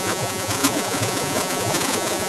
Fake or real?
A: fake